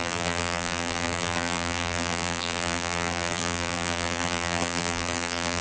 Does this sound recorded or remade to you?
remade